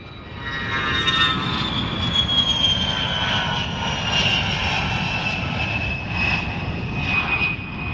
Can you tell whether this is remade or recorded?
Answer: recorded